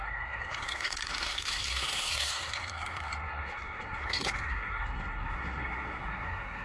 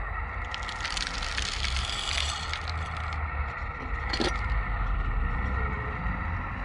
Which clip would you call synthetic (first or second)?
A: first